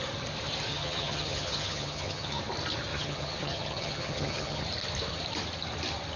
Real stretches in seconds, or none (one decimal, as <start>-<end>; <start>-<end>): 0.0-0.7; 2.4-2.9; 4.6-6.2